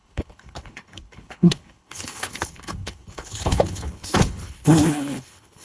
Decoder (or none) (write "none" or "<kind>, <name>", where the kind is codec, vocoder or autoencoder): codec, HILCodec